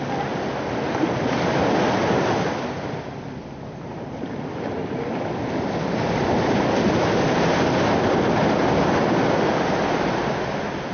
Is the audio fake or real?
real